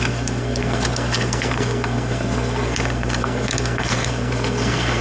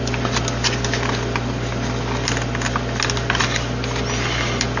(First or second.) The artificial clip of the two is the first